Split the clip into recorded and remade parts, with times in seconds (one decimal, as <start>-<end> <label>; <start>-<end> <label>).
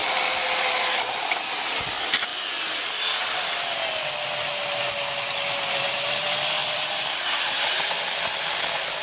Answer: 0.0-2.3 remade; 2.3-5.7 recorded; 5.7-9.0 remade